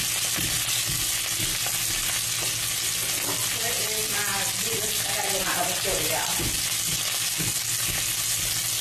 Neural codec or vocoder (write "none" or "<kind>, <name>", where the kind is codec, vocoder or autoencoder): none